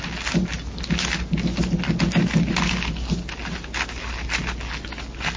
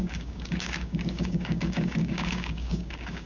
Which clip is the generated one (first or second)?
second